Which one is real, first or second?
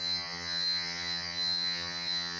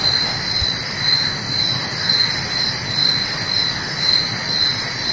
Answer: second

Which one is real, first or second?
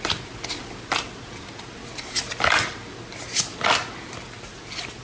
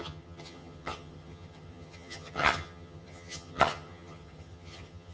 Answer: first